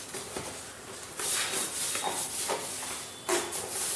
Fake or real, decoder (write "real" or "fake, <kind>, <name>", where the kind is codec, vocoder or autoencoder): real